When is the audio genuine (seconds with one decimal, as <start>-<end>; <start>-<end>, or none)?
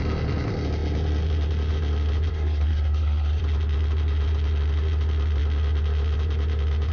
0.0-2.3; 3.4-6.9